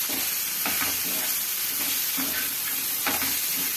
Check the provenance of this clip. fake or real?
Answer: real